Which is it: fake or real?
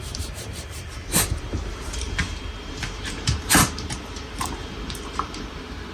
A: fake